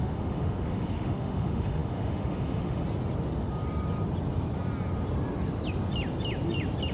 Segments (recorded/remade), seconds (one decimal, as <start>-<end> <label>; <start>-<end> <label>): 0.0-2.8 remade; 2.8-6.9 recorded